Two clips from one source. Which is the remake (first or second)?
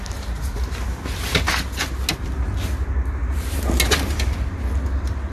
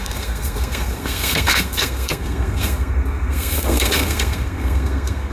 second